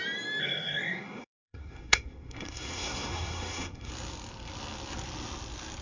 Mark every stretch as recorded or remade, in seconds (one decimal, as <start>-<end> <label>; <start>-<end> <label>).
0.0-0.4 recorded; 0.4-3.9 remade; 3.9-5.8 recorded